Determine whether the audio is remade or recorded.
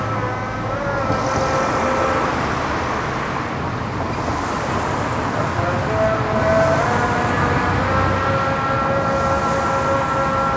recorded